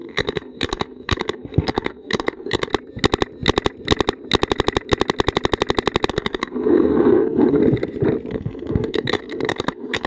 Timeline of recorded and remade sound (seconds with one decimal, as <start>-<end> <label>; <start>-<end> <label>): 0.0-2.7 remade; 2.7-6.1 recorded; 6.1-7.6 remade; 7.6-8.3 recorded; 8.3-10.1 remade